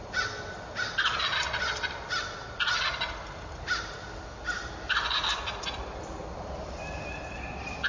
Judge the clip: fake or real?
real